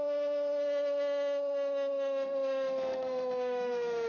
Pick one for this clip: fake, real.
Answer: fake